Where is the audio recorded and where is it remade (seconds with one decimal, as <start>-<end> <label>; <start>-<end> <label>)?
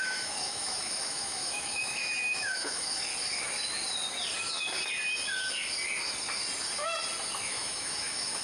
0.0-3.1 remade; 3.1-7.4 recorded; 7.4-8.4 remade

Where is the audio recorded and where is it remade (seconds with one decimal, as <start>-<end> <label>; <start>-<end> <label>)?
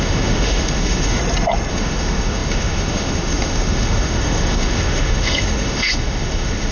0.0-1.2 remade; 1.2-1.7 recorded; 1.7-6.7 remade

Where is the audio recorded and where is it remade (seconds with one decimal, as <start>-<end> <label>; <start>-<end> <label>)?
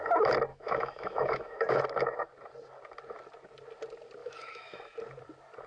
0.0-0.5 recorded; 0.5-1.8 remade; 1.8-4.2 recorded; 4.2-4.8 remade; 4.8-5.7 recorded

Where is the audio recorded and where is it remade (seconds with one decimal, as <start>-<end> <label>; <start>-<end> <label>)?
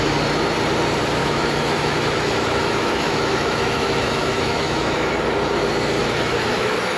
0.0-1.2 recorded; 1.2-5.1 remade; 5.1-6.0 recorded; 6.0-7.0 remade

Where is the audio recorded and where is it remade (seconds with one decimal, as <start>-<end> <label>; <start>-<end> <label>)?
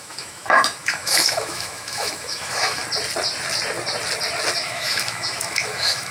0.0-2.8 remade; 2.8-4.6 recorded; 4.6-6.1 remade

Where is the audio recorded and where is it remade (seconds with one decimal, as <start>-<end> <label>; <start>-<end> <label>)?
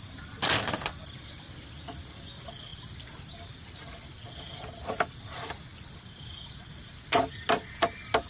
0.0-8.3 recorded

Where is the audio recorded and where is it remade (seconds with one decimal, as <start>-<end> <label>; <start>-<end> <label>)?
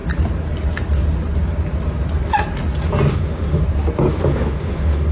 0.0-3.1 recorded; 3.1-3.6 remade; 3.6-4.1 recorded; 4.1-5.1 remade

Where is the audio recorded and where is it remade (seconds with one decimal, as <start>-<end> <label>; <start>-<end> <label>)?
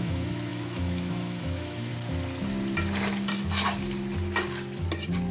0.0-1.9 remade; 1.9-5.3 recorded